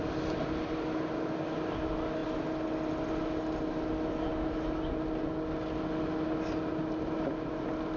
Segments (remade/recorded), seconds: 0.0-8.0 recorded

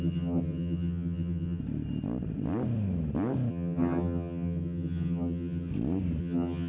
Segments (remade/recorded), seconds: 0.0-1.6 remade; 1.6-3.5 recorded; 3.5-5.7 remade; 5.7-6.2 recorded; 6.2-6.7 remade

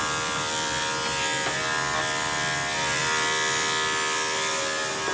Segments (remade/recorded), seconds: 0.0-5.1 recorded

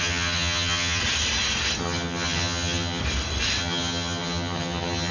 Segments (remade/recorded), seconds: 0.0-1.0 remade; 1.0-1.8 recorded; 1.8-3.0 remade; 3.0-3.6 recorded; 3.6-5.1 remade

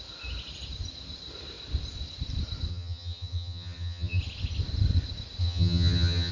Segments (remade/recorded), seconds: 0.0-2.7 recorded; 2.7-4.2 remade; 4.2-5.4 recorded; 5.4-6.3 remade

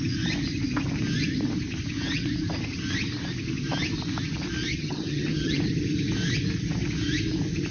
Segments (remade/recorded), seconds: 0.0-4.7 recorded; 4.7-5.6 remade; 5.6-7.7 recorded